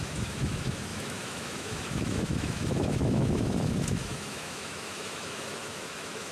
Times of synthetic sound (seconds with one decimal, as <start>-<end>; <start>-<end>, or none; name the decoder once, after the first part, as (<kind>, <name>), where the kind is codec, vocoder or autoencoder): 0.0-6.3 (autoencoder, DAC-VAE)